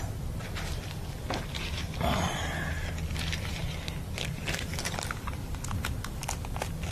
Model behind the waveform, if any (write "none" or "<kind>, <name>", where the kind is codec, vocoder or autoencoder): none